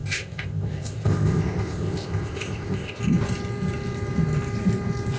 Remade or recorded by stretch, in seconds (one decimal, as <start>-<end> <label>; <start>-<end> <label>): 0.0-3.0 remade; 3.0-5.2 recorded